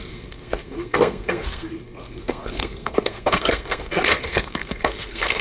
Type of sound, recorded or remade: remade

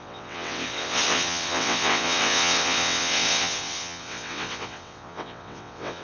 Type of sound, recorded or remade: remade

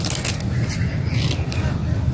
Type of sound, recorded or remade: recorded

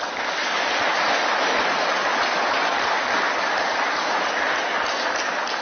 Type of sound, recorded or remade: recorded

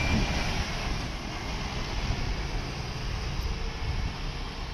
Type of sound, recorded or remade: recorded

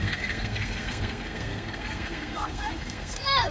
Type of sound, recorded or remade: remade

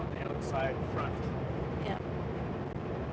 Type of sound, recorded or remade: recorded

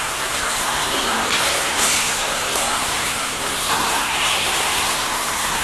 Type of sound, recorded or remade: remade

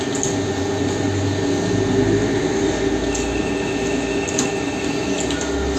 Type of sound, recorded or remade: recorded